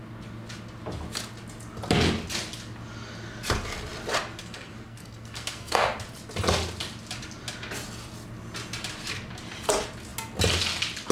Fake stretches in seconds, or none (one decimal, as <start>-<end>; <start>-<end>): 4.4-5.9